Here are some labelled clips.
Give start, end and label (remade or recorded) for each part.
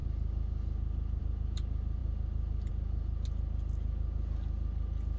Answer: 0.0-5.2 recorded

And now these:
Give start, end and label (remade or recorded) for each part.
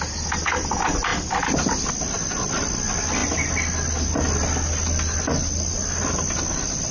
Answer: 0.0-6.9 recorded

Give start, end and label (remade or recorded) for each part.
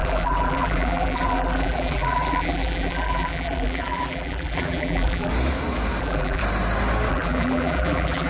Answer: 0.0-5.3 remade; 5.3-6.0 recorded; 6.0-6.4 remade; 6.4-7.1 recorded; 7.1-8.3 remade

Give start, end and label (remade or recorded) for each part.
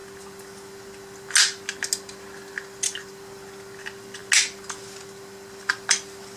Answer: 0.0-6.4 recorded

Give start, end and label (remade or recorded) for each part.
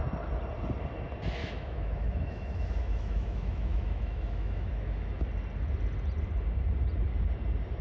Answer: 0.0-1.4 recorded; 1.4-5.2 remade; 5.2-7.8 recorded